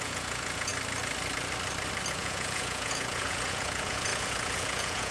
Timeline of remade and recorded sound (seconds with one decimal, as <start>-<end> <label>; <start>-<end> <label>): 0.0-0.7 remade; 0.7-2.1 recorded; 2.1-5.1 remade